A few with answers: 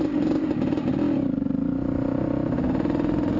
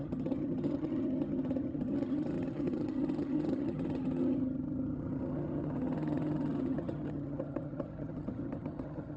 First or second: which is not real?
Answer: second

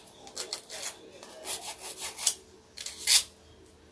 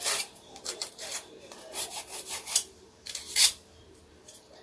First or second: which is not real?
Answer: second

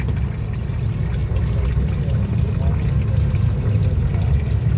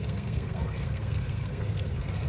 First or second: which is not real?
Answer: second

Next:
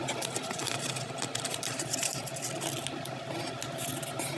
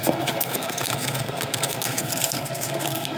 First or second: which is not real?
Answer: second